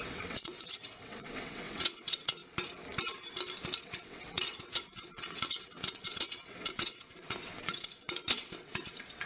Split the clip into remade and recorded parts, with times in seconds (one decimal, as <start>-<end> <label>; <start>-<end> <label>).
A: 0.0-2.4 remade; 2.4-3.8 recorded; 3.8-9.3 remade